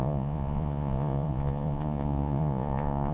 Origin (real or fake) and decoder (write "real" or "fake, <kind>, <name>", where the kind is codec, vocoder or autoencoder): fake, vocoder, Vocos